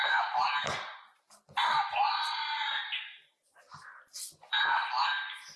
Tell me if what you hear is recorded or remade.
recorded